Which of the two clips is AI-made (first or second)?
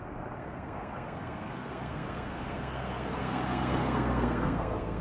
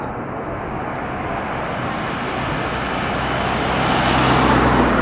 first